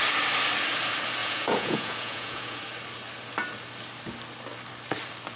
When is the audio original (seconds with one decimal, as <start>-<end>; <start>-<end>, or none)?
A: 0.0-1.2; 2.6-5.4